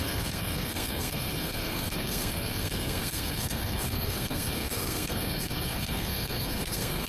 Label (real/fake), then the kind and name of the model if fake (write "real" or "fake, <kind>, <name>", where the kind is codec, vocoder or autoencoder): fake, codec, SNAC